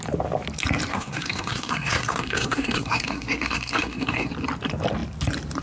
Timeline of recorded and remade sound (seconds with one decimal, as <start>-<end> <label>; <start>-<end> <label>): 0.0-0.9 recorded; 0.9-4.3 remade; 4.3-5.6 recorded